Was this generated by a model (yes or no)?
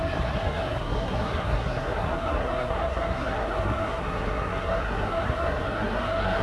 yes